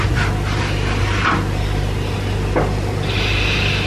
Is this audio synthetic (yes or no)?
no